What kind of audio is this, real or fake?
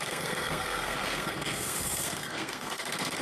fake